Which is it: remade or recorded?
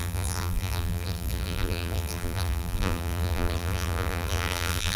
remade